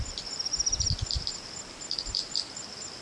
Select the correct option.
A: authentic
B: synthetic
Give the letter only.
A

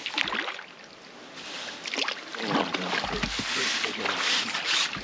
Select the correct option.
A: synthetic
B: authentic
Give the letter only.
B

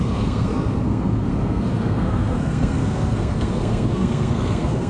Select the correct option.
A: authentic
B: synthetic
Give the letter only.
B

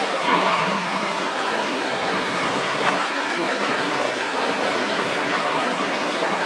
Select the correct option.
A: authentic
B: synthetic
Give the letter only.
B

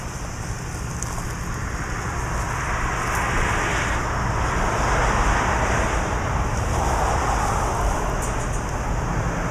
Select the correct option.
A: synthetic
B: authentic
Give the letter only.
B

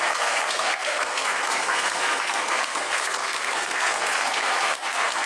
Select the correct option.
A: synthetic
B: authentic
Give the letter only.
A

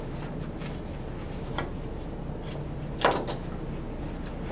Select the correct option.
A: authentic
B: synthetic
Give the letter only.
A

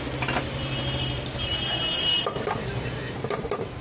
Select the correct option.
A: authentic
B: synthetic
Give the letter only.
A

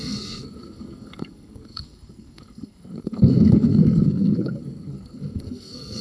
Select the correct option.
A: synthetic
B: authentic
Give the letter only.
A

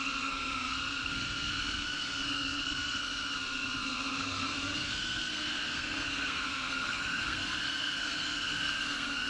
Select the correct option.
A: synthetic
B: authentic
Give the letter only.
A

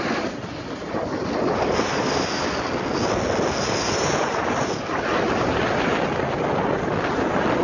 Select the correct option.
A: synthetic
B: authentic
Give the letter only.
B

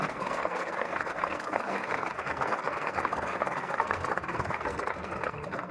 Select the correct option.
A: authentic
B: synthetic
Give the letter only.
B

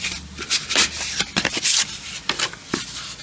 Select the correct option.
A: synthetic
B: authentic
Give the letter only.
B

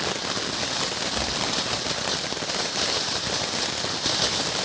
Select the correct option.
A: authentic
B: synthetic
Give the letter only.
A